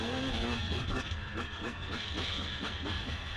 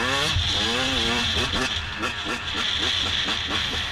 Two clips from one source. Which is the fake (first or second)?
first